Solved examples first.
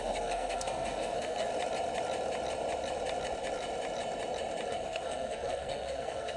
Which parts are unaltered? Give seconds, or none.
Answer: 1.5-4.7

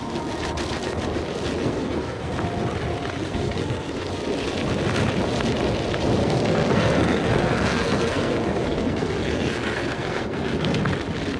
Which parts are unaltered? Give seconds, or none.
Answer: 0.0-1.6; 2.3-3.2; 4.1-6.2; 10.8-11.4

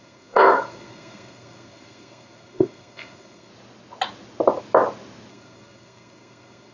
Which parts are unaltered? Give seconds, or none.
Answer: 3.5-5.3

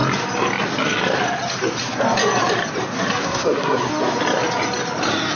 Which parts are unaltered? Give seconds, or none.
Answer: 0.0-3.2; 3.9-5.4

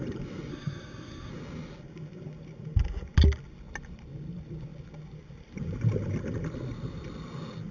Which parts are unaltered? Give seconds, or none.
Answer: 0.0-0.5; 1.3-7.7

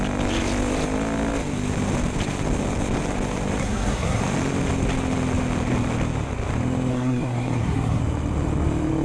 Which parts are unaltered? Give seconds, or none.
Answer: 0.0-3.6; 4.2-6.9; 8.0-9.0